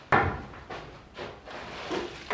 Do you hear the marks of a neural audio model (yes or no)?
no